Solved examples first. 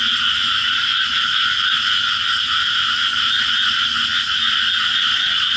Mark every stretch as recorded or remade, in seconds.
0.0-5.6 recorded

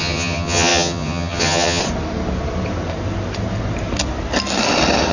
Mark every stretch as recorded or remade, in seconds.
0.0-1.8 remade; 1.8-5.1 recorded

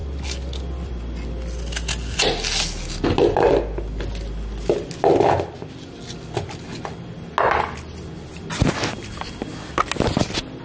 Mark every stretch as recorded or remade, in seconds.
0.0-10.6 recorded

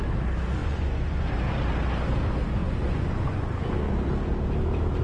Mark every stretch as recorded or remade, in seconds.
0.0-0.6 recorded; 0.6-1.3 remade; 1.3-2.6 recorded; 2.6-3.9 remade; 3.9-5.0 recorded

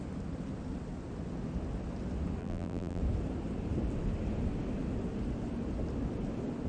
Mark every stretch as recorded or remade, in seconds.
0.0-2.4 recorded; 2.4-3.0 remade; 3.0-6.7 recorded

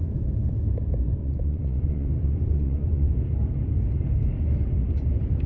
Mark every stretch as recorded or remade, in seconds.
0.0-1.2 recorded; 1.2-3.1 remade; 3.1-5.5 recorded

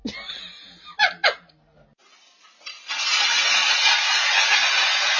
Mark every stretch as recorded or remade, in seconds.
0.0-5.2 recorded